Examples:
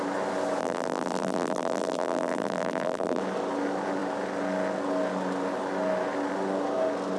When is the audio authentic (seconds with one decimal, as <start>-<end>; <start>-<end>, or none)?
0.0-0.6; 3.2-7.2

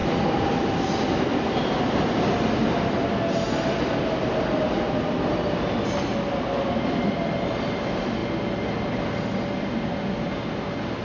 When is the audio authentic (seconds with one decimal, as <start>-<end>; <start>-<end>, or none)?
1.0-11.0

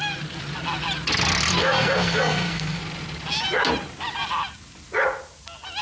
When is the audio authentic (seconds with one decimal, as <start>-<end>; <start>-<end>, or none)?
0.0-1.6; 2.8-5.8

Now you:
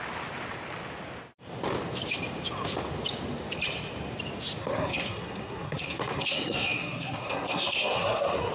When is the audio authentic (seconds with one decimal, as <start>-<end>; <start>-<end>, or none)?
0.0-4.6

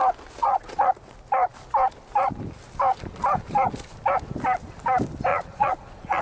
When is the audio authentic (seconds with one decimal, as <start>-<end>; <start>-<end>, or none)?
0.0-0.4; 0.9-5.3

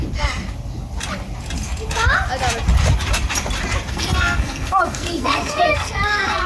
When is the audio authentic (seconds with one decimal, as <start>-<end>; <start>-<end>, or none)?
0.0-3.9